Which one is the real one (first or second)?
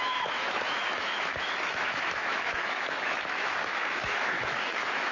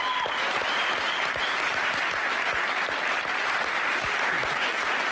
second